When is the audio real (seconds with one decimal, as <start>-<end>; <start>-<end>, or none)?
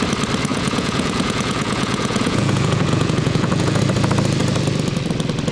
0.0-0.5; 3.8-5.5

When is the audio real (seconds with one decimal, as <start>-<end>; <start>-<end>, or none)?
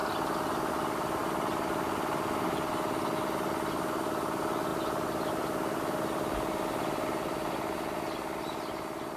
0.7-1.2; 2.7-4.7; 5.3-9.2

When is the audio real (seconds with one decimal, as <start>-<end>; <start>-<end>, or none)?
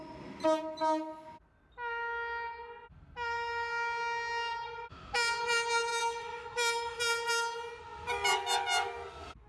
0.0-5.9; 7.0-9.5